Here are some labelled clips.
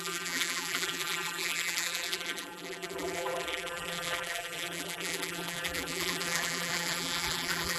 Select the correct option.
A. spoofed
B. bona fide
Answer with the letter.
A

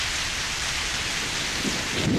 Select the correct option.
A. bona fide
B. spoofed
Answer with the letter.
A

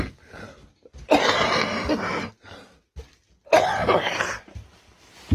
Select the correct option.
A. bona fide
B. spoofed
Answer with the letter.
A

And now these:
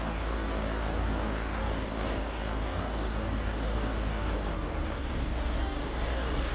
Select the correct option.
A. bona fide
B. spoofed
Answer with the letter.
B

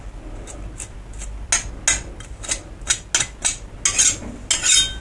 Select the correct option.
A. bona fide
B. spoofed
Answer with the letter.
A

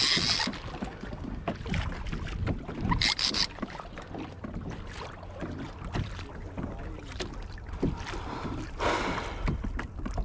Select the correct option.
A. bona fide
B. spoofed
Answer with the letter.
A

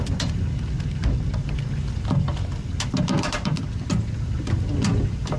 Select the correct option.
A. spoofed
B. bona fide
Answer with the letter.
B